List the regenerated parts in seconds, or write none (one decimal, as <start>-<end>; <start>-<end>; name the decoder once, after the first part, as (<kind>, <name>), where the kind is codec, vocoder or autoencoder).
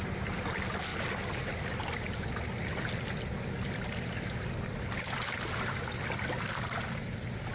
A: none